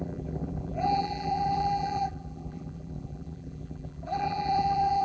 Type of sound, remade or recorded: remade